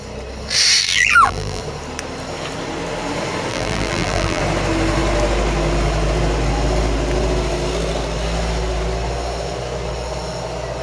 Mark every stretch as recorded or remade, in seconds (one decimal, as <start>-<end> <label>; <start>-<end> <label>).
0.0-0.8 recorded; 0.8-1.6 remade; 1.6-3.5 recorded; 3.5-4.4 remade; 4.4-10.8 recorded